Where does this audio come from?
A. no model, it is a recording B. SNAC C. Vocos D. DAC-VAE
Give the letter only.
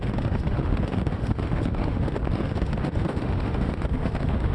D